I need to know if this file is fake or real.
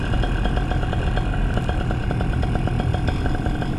real